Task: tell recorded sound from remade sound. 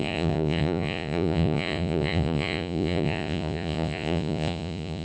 remade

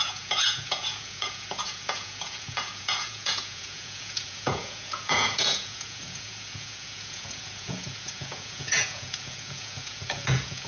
remade